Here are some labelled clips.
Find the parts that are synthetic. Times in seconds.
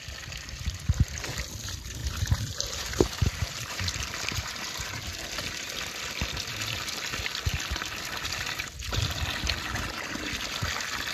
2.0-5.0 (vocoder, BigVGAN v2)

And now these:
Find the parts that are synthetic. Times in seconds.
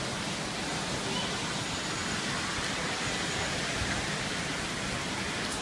none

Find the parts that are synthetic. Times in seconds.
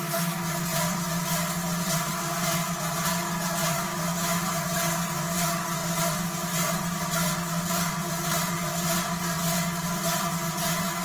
3.9-4.4 (autoencoder, DAC-VAE)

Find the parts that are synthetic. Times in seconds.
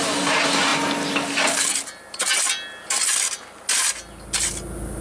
none